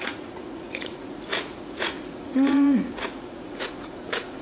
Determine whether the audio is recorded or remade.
remade